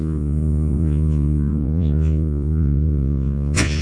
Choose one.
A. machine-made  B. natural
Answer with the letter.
A